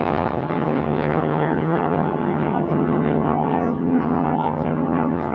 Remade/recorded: remade